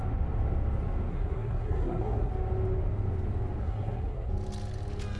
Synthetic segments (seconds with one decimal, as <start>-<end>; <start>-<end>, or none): 1.1-2.3; 3.6-4.3